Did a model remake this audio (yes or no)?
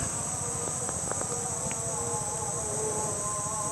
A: no